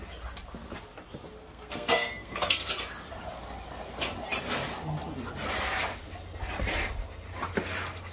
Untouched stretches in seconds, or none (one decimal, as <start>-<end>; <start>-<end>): 0.0-1.4; 2.7-8.1